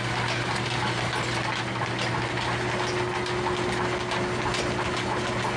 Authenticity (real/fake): real